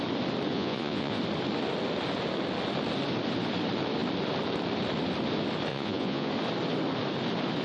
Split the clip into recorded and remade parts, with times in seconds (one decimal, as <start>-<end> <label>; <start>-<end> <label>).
0.0-0.5 recorded; 0.5-1.2 remade; 1.2-5.7 recorded; 5.7-6.3 remade; 6.3-7.6 recorded